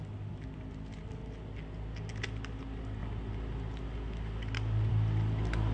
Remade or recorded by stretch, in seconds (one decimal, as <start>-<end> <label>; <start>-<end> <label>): 0.0-5.7 recorded